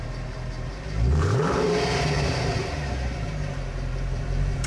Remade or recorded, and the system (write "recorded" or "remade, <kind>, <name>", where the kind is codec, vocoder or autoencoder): remade, vocoder, BigVGAN v2